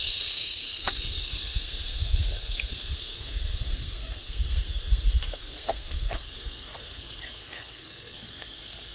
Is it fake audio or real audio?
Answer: fake